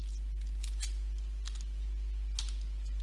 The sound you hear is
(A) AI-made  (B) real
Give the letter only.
B